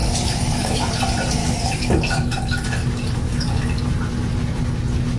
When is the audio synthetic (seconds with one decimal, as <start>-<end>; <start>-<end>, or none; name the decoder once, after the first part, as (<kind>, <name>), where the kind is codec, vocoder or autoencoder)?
0.0-0.9 (codec, DAC); 1.4-3.8